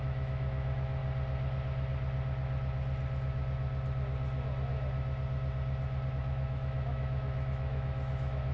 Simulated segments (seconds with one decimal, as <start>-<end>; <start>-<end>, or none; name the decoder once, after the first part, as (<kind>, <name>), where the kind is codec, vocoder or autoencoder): 0.0-1.0 (autoencoder, DAC-VAE); 6.1-8.5